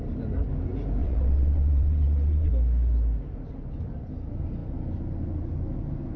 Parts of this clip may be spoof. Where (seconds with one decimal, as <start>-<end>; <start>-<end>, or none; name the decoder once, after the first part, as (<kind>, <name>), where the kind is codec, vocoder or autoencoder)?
1.0-2.5 (vocoder, WaveNeXt)